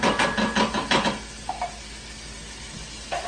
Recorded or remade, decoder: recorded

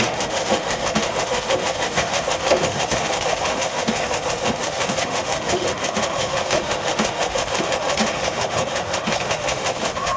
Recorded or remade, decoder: remade, autoencoder, DAC-VAE